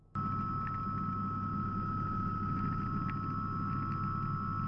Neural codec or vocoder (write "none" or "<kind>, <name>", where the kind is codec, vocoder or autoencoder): none